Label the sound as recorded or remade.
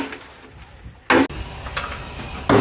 recorded